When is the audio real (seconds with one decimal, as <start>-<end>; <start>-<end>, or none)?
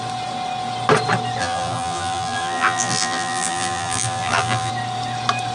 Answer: 0.0-1.4; 4.7-5.5